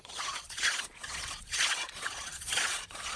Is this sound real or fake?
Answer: fake